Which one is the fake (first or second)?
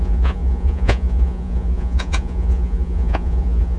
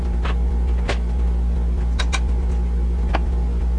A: first